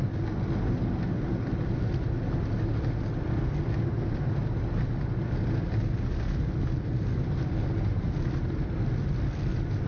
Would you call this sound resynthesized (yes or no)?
no